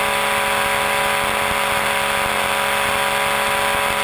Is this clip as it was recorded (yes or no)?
yes